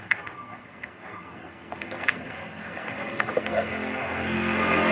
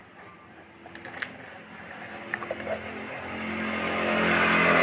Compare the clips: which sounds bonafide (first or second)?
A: second